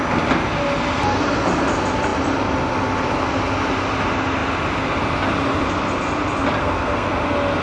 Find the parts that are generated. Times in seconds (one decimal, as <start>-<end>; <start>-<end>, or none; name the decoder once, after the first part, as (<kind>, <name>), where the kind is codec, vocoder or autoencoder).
6.6-7.1 (codec, SNAC)

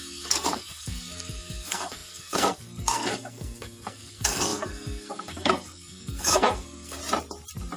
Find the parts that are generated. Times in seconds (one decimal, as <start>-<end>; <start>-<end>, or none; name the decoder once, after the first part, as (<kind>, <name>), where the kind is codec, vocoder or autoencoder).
0.0-7.0 (codec, SNAC)

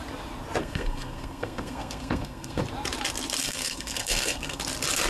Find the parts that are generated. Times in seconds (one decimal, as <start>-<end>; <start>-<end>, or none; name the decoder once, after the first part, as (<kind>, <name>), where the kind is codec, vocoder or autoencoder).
0.6-2.6 (codec, SNAC); 3.4-4.6